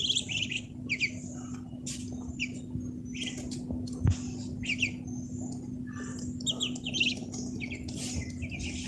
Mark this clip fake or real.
real